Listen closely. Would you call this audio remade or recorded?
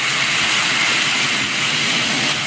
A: remade